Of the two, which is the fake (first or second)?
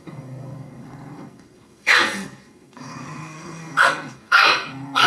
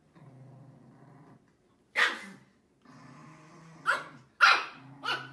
first